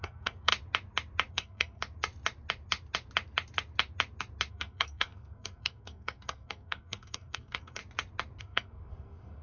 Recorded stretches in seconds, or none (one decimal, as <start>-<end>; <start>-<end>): 0.5-1.3; 1.8-4.5; 7.8-8.4